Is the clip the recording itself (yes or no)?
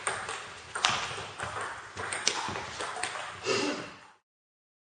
yes